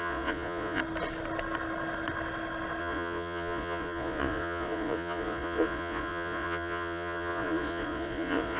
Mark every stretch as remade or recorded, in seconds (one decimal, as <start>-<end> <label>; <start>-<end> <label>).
0.0-0.8 remade; 0.8-2.8 recorded; 2.8-8.6 remade